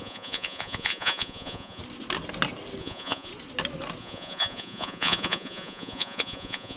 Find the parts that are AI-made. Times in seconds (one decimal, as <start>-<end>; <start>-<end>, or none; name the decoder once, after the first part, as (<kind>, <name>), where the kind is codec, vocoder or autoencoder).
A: 0.0-1.8 (vocoder, Vocos); 2.8-3.3; 4.0-6.8